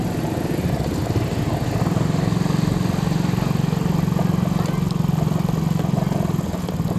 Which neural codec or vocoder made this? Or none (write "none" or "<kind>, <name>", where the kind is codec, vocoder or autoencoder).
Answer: none